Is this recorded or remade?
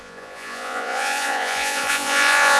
remade